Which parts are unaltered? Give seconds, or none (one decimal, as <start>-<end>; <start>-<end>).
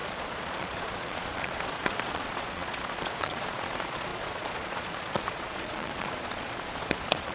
none